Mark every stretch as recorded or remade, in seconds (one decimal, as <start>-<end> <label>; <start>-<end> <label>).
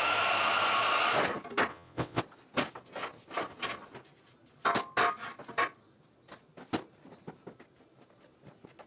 0.0-1.7 recorded; 1.7-2.2 remade; 2.2-8.9 recorded